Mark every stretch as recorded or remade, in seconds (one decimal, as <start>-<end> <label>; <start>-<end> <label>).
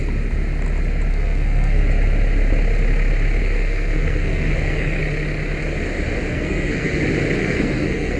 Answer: 0.0-1.1 recorded; 1.1-1.8 remade; 1.8-3.4 recorded; 3.4-5.0 remade; 5.0-6.3 recorded; 6.3-7.0 remade; 7.0-7.4 recorded; 7.4-8.2 remade